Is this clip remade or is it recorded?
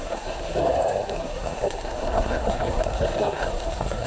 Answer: remade